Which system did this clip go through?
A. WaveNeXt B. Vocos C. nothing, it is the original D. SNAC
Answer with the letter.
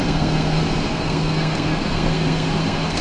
D